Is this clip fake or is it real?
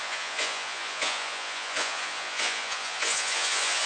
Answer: fake